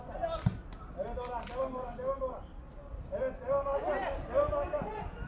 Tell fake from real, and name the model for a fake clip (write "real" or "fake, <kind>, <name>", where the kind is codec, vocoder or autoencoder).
real